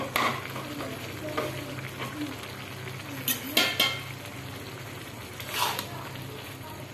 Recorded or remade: recorded